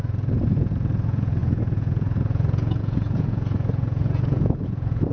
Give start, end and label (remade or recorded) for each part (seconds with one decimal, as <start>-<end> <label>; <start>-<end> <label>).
0.0-5.1 remade